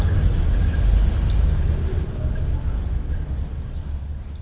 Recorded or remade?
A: recorded